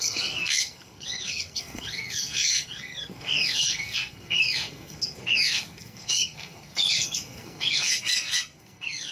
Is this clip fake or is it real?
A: fake